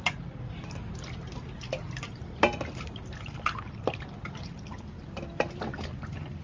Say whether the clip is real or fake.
real